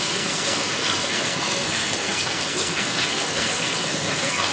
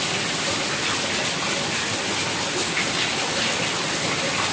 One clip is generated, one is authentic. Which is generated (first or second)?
first